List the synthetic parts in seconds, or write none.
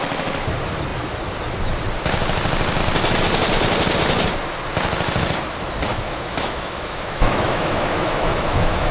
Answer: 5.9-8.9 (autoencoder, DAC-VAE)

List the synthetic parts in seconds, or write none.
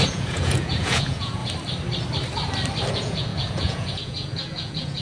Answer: 0.0-1.4 (vocoder, Vocos); 2.9-5.0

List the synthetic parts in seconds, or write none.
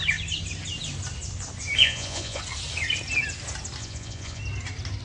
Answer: 1.8-2.4 (vocoder, Vocos); 3.8-4.4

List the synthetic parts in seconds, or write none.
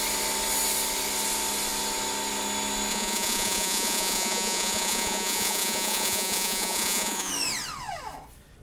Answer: 2.9-7.3 (vocoder, Vocos)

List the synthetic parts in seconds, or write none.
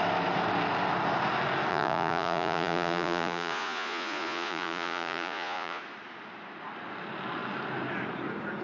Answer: 1.7-5.8 (vocoder, Vocos)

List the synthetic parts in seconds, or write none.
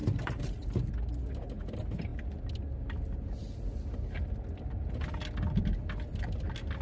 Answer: 0.0-0.9 (vocoder, BigVGAN v2)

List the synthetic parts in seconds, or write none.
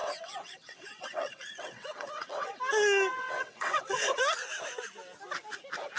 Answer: 0.0-2.6 (vocoder, WaveNeXt); 3.1-4.2